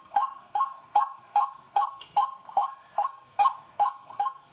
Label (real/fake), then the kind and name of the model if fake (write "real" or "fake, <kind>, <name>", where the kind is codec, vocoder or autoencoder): fake, codec, SNAC